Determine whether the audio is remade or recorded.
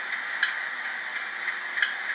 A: recorded